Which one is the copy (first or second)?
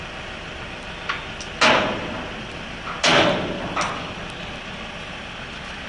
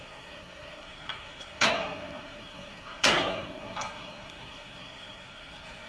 second